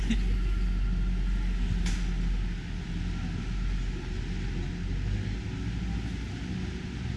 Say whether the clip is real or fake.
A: real